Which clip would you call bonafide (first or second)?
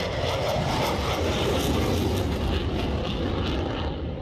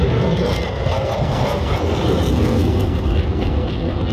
first